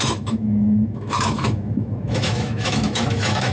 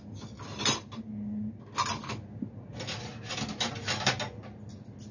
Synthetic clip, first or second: first